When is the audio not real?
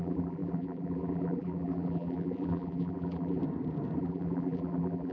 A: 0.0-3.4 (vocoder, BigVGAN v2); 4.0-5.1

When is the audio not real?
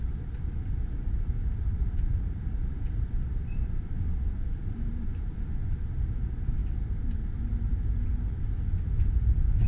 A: 0.0-6.6 (vocoder, BigVGAN v2); 7.2-7.7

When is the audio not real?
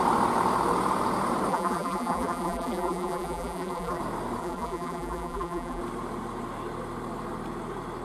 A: 1.5-4.0 (vocoder, BigVGAN v2); 4.4-5.8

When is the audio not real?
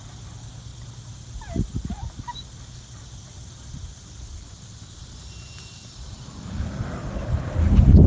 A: none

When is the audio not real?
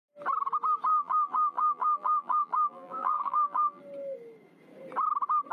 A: 0.9-3.8 (vocoder, BigVGAN v2)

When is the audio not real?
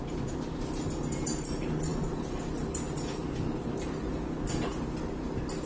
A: none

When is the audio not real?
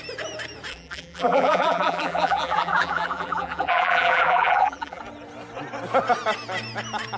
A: 0.7-5.0 (vocoder, BigVGAN v2)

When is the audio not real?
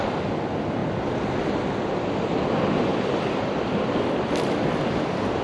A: 2.9-5.4 (vocoder, BigVGAN v2)